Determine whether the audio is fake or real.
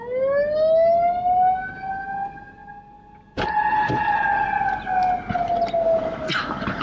real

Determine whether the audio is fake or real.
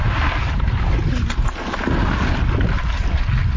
real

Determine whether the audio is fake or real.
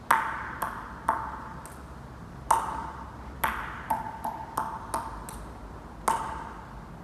real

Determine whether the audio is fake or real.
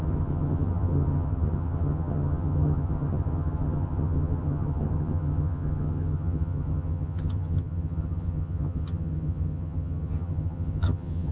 fake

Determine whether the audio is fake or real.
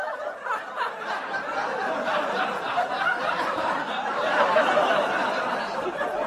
fake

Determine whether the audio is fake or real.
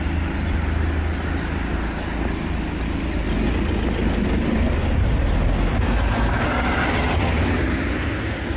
real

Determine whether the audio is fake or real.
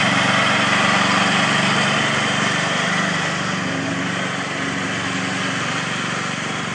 real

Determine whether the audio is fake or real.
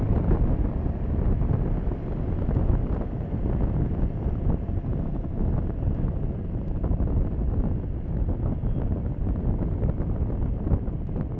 real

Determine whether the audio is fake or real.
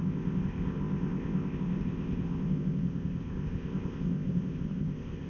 fake